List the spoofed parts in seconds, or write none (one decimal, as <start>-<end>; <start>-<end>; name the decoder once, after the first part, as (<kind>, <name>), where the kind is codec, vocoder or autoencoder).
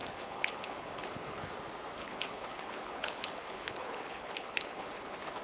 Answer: 0.0-1.5 (codec, HILCodec); 2.0-5.4